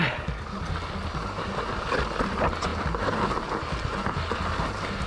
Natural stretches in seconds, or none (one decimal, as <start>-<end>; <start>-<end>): 0.0-5.1